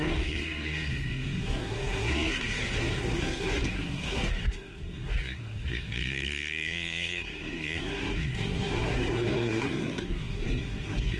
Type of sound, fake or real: fake